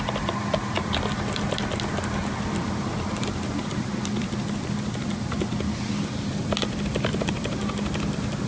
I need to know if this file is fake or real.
real